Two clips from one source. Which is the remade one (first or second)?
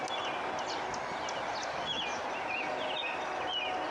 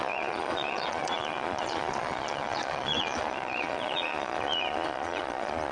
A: second